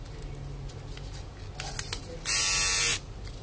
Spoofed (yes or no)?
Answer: no